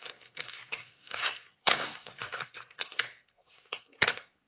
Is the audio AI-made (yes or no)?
yes